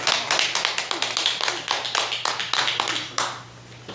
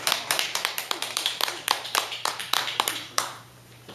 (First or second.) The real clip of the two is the first